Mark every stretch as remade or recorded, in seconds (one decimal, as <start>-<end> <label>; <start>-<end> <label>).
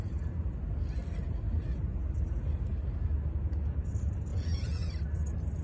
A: 0.0-4.3 recorded; 4.3-4.9 remade; 4.9-5.6 recorded